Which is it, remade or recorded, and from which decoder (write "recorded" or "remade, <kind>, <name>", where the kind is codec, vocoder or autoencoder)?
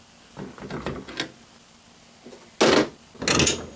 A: recorded